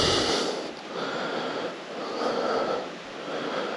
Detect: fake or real real